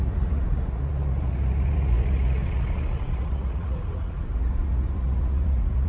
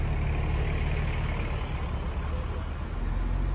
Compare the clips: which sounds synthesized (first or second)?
first